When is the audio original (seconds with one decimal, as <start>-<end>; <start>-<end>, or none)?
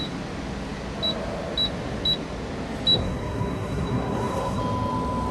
0.0-3.0; 4.6-5.3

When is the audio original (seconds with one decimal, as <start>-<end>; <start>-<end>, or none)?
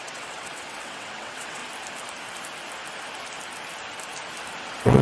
1.6-4.6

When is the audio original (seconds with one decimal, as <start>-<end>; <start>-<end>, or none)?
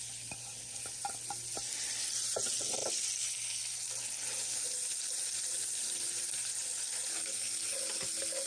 0.0-8.5